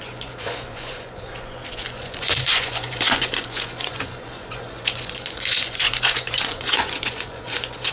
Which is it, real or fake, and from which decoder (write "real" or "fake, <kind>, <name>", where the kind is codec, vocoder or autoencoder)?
fake, vocoder, Vocos